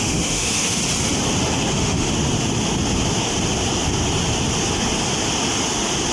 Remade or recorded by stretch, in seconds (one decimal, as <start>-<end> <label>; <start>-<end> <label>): 0.0-0.8 remade; 0.8-1.7 recorded; 1.7-2.1 remade; 2.1-6.1 recorded